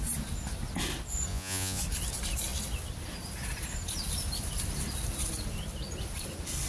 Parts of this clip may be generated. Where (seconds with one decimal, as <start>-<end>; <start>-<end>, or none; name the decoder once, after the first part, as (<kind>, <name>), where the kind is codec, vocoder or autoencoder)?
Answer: 1.3-1.8 (vocoder, Vocos)